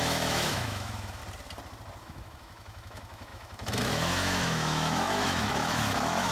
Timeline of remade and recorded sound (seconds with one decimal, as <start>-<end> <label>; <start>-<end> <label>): 0.0-1.2 remade; 1.2-2.0 recorded; 2.0-6.3 remade